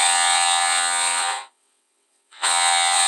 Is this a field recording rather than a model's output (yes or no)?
no